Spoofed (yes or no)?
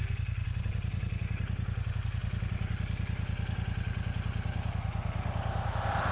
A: no